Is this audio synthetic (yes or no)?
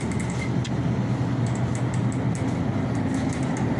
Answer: no